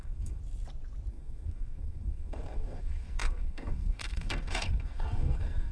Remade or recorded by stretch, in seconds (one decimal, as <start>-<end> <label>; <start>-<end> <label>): 0.0-0.4 remade; 0.4-1.1 recorded; 1.1-5.7 remade